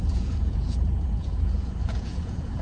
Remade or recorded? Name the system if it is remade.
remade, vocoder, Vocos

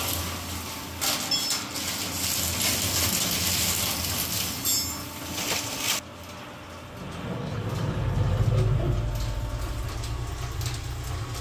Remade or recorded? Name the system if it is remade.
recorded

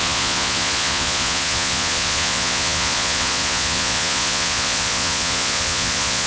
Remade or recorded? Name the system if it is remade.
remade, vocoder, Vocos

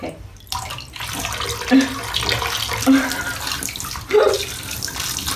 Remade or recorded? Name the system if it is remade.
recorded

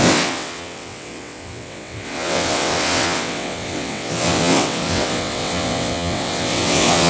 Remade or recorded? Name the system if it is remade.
remade, vocoder, WaveNeXt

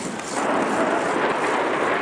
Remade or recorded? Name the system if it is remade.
recorded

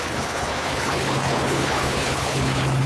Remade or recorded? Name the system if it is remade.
remade, codec, HILCodec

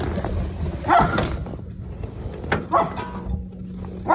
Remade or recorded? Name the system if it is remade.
recorded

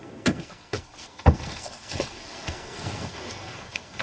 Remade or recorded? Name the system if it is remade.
remade, codec, SNAC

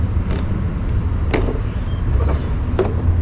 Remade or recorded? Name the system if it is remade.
recorded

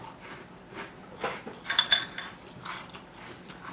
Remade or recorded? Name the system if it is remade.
recorded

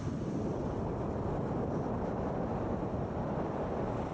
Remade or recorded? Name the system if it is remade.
recorded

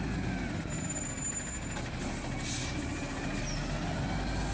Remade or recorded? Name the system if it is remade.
recorded